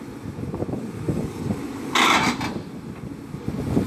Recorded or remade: recorded